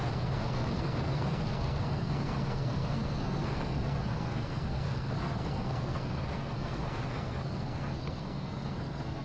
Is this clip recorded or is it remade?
remade